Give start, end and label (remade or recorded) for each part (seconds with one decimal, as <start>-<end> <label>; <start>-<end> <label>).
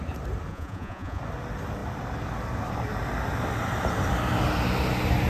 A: 0.0-0.5 recorded; 0.5-1.2 remade; 1.2-5.3 recorded